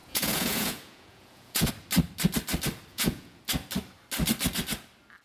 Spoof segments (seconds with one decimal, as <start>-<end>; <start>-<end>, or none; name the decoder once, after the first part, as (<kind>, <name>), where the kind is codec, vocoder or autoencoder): 0.0-1.7 (vocoder, Vocos); 2.9-3.4